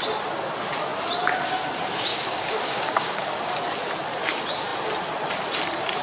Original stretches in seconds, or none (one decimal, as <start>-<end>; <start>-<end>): 0.0-2.1; 3.4-6.0